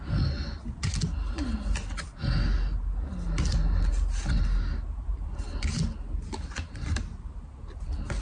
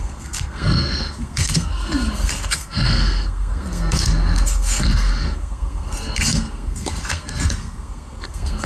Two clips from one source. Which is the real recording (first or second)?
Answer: first